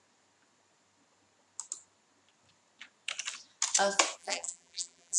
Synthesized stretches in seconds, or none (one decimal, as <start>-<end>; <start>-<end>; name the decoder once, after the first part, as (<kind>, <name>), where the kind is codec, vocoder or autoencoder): 4.2-5.2 (vocoder, BigVGAN v2)